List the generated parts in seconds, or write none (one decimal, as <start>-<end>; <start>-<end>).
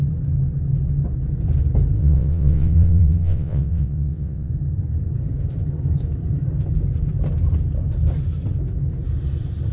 2.0-4.5